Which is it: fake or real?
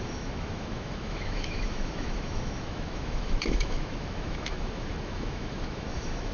fake